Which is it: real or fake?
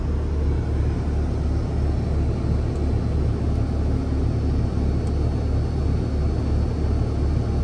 real